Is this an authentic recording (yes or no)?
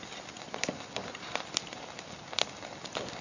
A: yes